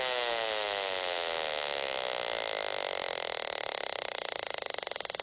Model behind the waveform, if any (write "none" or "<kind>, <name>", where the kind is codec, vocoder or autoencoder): none